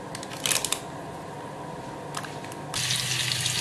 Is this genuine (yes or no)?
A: yes